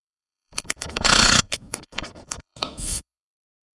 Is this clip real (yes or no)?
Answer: no